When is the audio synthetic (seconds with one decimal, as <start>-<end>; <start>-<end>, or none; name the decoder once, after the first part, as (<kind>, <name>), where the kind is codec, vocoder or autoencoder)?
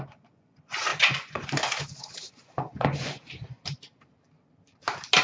0.0-3.2 (vocoder, Vocos)